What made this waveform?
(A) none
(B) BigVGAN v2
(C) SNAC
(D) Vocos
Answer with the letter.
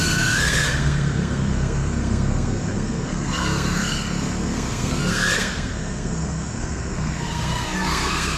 C